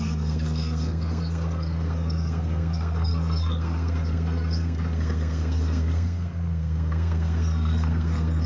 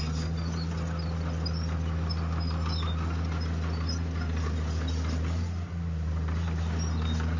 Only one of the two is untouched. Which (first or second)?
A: second